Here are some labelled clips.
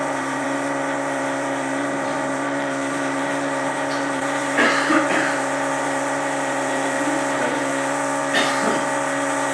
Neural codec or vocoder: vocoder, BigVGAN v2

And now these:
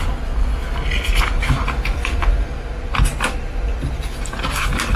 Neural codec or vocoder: none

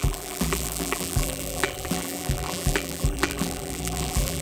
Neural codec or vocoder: vocoder, BigVGAN v2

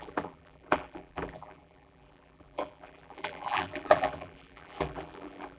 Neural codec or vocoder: vocoder, BigVGAN v2